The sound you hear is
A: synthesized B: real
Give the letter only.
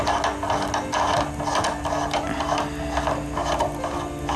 B